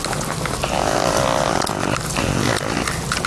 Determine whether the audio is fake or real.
real